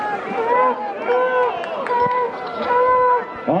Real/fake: real